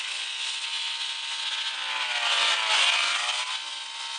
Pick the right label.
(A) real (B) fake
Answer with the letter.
A